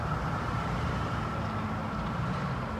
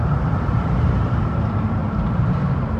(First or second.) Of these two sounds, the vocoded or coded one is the second